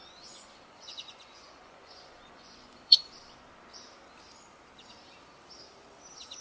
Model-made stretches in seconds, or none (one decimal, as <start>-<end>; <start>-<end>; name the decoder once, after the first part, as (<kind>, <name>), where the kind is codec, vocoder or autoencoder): 0.0-3.1 (vocoder, Vocos)